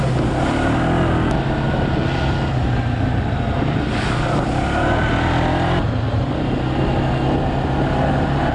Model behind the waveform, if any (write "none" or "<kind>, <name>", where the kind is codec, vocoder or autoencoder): none